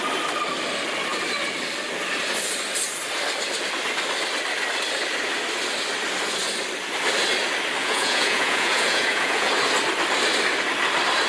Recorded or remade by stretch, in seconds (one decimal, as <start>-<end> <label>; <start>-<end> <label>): 0.0-7.8 recorded; 7.8-9.5 remade; 9.5-11.3 recorded